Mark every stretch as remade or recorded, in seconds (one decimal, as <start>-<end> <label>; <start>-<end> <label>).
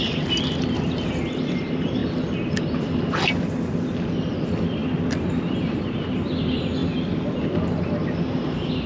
0.0-8.9 recorded